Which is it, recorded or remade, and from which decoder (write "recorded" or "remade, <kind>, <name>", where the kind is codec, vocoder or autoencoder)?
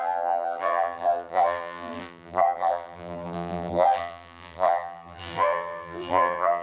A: remade, vocoder, BigVGAN v2